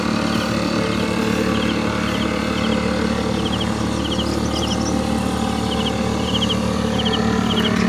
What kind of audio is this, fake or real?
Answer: real